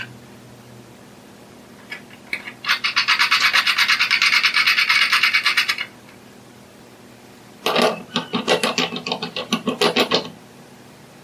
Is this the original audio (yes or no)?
yes